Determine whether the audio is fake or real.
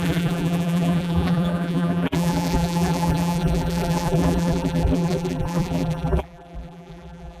fake